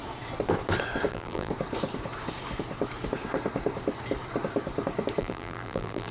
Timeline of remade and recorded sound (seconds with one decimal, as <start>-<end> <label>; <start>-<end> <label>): 0.0-1.1 recorded; 1.1-1.5 remade; 1.5-5.2 recorded; 5.2-6.1 remade